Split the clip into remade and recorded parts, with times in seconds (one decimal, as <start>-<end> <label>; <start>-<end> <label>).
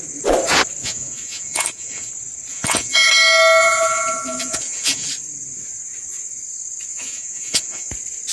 0.0-0.8 recorded; 0.8-2.1 remade; 2.1-2.5 recorded; 2.5-3.1 remade; 3.1-3.6 recorded; 3.6-5.1 remade; 5.1-6.9 recorded; 6.9-7.9 remade; 7.9-8.3 recorded